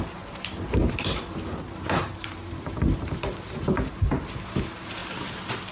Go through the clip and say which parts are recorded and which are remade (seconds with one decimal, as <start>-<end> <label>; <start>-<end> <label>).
0.0-0.8 recorded; 0.8-4.2 remade; 4.2-5.7 recorded